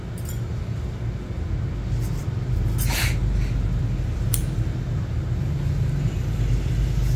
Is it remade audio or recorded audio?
recorded